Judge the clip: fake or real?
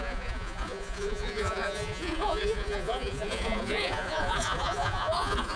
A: fake